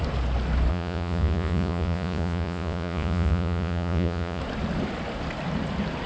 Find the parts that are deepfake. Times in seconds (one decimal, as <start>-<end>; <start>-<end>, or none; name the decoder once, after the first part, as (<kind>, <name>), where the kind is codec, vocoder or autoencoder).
0.7-4.4 (vocoder, Vocos)